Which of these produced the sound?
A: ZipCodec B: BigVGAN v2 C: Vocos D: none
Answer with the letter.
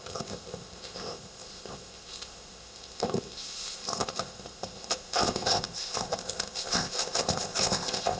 A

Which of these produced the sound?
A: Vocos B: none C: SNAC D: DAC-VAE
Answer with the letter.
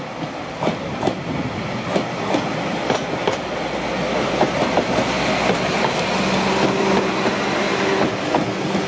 B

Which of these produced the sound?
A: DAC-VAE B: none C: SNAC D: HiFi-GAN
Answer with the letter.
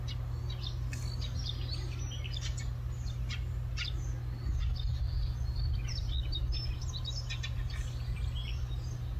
B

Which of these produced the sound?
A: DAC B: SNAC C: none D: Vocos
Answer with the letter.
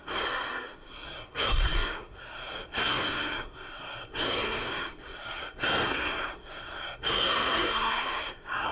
B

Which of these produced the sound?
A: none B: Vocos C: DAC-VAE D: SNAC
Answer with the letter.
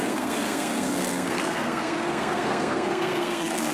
D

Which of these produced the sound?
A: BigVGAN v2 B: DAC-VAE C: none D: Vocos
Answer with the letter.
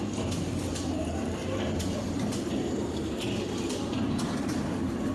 C